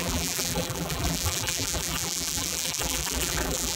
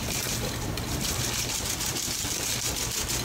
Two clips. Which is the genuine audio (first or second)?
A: second